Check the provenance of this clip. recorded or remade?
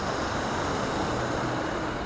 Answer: recorded